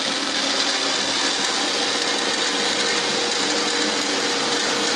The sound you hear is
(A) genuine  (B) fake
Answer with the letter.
A